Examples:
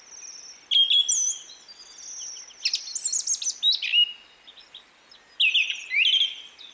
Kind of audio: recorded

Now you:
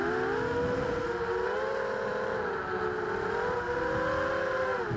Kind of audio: recorded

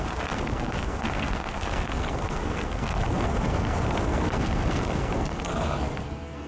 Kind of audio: remade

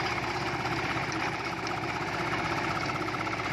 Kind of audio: recorded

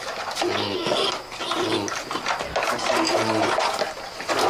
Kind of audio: recorded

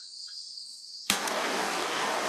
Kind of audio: remade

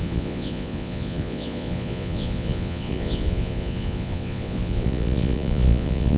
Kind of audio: remade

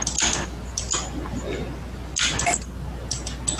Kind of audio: recorded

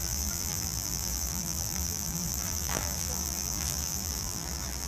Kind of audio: remade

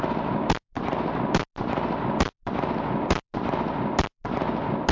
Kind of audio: recorded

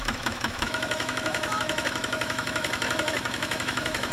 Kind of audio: remade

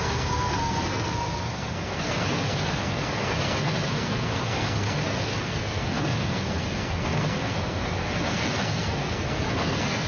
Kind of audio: remade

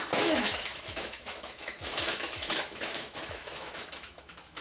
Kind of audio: remade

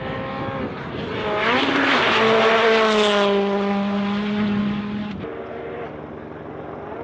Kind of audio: recorded